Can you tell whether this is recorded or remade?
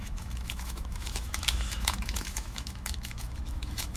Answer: remade